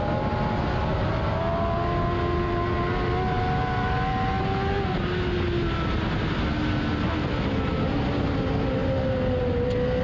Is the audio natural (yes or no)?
yes